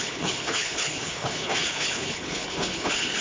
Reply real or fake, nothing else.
fake